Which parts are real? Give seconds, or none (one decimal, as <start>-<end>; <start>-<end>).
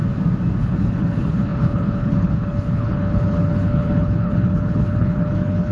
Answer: 0.0-0.6